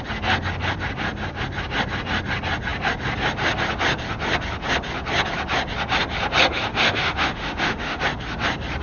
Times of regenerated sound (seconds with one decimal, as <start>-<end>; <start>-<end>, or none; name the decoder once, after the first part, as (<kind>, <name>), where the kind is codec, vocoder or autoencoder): 6.7-8.0 (autoencoder, DAC-VAE)